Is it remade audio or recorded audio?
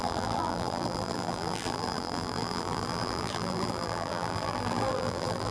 remade